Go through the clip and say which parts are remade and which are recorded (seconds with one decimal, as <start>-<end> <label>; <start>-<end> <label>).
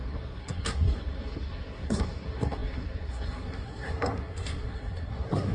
0.0-5.5 remade